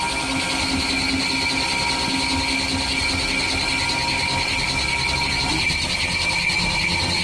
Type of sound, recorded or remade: recorded